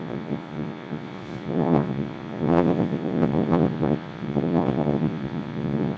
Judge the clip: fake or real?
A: fake